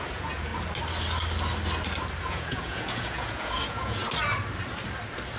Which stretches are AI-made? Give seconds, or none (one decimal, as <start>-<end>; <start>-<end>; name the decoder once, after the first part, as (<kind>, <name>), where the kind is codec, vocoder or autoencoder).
0.0-0.5 (vocoder, Vocos); 2.2-4.0